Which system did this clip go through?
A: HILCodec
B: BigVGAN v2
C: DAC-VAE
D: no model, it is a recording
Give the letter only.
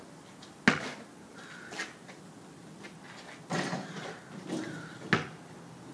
D